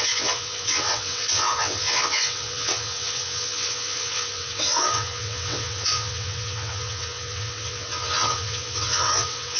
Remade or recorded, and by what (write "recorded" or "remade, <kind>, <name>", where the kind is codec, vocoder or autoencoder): remade, vocoder, WaveNeXt